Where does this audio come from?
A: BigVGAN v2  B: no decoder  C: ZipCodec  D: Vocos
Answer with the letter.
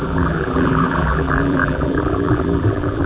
A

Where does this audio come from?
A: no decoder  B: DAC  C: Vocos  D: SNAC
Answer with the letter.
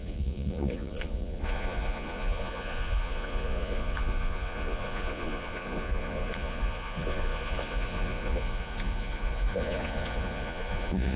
C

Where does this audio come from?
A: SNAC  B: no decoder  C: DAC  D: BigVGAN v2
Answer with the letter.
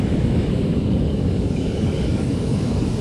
C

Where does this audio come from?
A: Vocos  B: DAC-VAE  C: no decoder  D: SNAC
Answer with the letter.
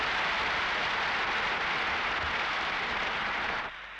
C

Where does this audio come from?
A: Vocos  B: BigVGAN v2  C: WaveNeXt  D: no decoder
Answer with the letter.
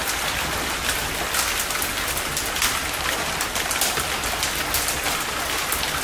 D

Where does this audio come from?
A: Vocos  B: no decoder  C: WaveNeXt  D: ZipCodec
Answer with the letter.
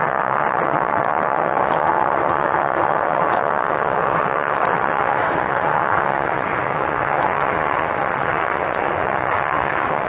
C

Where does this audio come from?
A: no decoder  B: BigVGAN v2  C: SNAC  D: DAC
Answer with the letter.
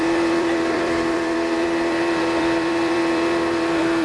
B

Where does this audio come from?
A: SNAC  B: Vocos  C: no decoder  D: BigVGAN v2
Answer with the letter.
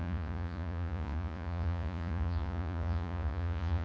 B